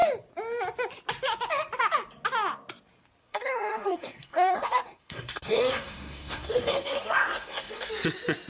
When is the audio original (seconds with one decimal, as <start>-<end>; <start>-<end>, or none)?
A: 0.0-3.2; 7.9-8.5